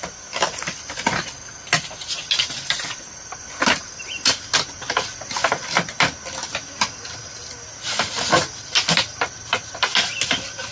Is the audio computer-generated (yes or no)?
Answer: no